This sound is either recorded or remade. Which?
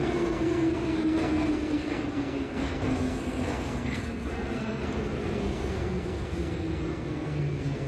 remade